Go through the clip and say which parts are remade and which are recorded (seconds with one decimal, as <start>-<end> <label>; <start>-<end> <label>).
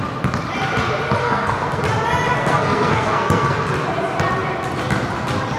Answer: 0.0-1.2 recorded; 1.2-1.8 remade; 1.8-2.3 recorded; 2.3-3.7 remade; 3.7-5.6 recorded